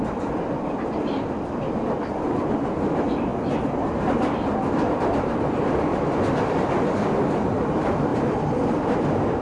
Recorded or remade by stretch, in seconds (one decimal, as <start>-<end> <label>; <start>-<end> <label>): 0.0-9.4 recorded